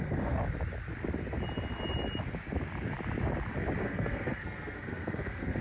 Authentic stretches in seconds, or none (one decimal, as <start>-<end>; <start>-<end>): 0.4-3.8

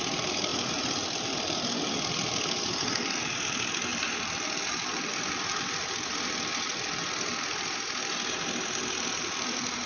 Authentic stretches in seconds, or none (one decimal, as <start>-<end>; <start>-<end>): 0.0-0.5; 3.3-3.9; 5.3-9.9

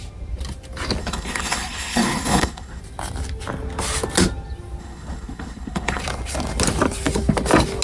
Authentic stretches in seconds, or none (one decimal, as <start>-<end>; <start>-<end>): 0.0-1.0; 2.8-4.8; 6.0-7.8

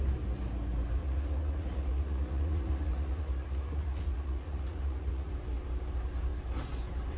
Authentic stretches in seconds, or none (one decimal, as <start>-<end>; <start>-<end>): 0.0-1.0; 5.3-7.2

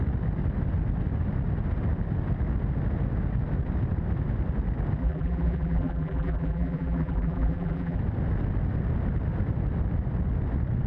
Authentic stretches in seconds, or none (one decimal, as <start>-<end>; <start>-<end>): 0.0-5.0; 8.0-10.9

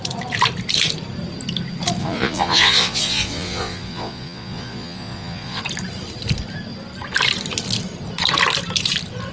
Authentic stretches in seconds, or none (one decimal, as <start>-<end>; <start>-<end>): 0.0-2.0; 5.6-9.3

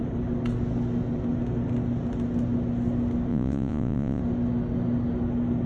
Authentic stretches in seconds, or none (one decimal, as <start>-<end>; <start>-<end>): 0.0-3.3; 4.2-5.7

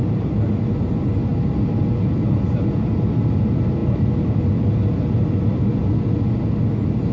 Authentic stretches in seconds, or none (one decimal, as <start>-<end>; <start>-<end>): 0.0-7.1